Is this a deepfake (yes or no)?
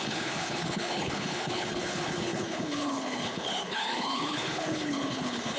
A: yes